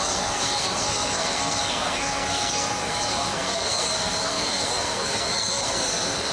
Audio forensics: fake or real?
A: fake